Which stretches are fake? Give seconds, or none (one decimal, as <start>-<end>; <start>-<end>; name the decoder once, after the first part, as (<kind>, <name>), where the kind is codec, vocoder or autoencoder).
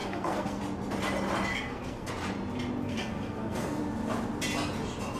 0.0-0.6 (codec, SNAC); 1.5-2.1; 2.8-3.8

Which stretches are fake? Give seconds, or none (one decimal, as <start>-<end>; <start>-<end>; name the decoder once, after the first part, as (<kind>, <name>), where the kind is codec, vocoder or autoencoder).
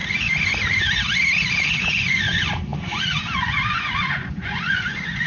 1.6-5.3 (vocoder, Vocos)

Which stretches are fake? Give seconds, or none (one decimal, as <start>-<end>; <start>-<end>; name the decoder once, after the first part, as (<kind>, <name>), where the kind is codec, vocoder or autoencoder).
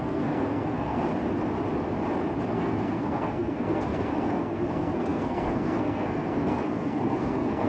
0.0-1.1 (codec, SNAC); 2.5-7.7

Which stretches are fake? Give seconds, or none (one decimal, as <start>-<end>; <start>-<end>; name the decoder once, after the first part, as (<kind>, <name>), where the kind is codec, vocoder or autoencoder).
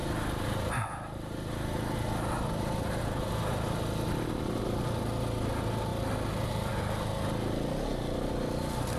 none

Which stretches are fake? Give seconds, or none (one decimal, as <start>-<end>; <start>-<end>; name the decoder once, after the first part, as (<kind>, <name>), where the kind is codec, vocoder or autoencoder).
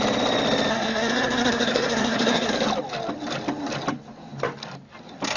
0.7-2.5 (codec, SNAC)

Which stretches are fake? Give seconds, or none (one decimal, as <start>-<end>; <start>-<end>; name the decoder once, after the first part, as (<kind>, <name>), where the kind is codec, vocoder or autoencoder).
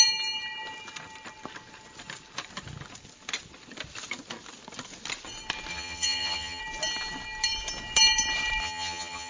5.7-6.6 (vocoder, HiFi-GAN); 8.6-9.3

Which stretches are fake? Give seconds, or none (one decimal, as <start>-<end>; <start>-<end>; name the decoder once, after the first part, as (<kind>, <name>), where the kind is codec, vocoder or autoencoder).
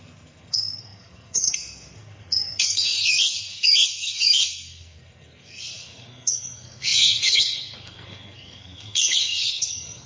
0.0-10.1 (codec, SNAC)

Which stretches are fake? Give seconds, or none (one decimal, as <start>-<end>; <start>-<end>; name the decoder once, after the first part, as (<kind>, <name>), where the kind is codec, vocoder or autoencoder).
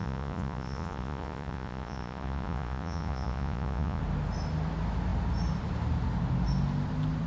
0.0-4.0 (vocoder, Vocos)